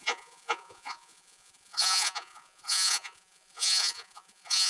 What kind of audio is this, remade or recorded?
remade